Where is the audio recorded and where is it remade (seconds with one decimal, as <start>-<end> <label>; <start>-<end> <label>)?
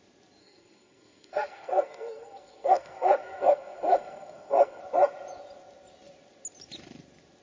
0.0-0.4 recorded; 0.4-4.8 remade; 4.8-7.4 recorded